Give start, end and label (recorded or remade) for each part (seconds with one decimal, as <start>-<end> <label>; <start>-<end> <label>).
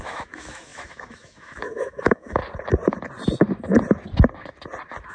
0.0-2.4 remade; 2.4-5.1 recorded